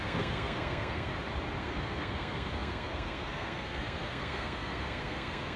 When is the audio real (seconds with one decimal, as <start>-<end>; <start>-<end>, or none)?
1.1-1.6